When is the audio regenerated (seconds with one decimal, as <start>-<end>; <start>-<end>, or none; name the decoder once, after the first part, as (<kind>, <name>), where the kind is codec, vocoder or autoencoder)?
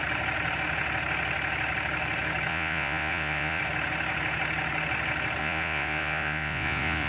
2.5-3.6 (vocoder, Vocos); 5.4-7.1